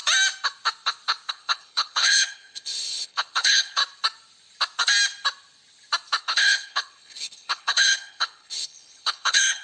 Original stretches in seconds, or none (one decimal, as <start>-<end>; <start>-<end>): 0.0-1.3; 3.8-6.2